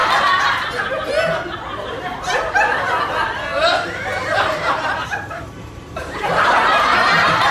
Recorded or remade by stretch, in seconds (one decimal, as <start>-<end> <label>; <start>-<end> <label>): 0.0-1.7 recorded; 1.7-3.0 remade; 3.0-4.3 recorded; 4.3-7.5 remade